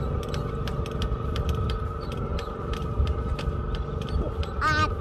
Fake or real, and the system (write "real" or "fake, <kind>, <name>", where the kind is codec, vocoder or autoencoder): real